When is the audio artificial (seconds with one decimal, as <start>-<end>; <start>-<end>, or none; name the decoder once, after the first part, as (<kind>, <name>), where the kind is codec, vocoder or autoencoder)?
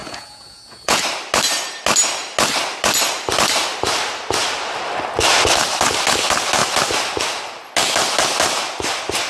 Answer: 0.0-1.0 (vocoder, Vocos)